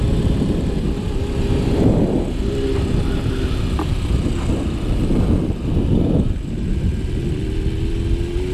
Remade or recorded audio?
recorded